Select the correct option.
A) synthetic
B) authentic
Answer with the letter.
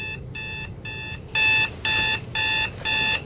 B